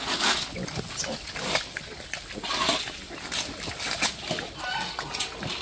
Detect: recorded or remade recorded